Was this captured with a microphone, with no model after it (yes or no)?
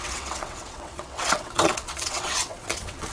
no